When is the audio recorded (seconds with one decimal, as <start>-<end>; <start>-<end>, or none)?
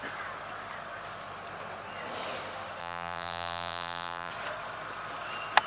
0.0-2.8; 4.3-5.7